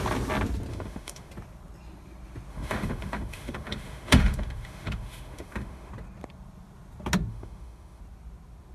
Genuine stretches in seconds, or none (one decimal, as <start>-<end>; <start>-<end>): 0.0-0.7; 1.3-2.5; 5.9-7.3; 8.0-8.7